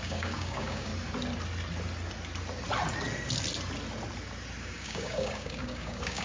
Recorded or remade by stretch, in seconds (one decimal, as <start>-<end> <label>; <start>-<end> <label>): 0.0-0.9 remade; 0.9-4.6 recorded; 4.6-6.2 remade